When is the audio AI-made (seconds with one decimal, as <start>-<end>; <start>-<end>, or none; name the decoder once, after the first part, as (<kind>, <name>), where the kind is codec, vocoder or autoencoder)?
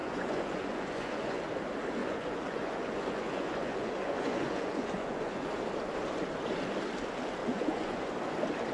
0.0-1.4 (vocoder, Vocos); 2.0-5.5; 7.4-8.1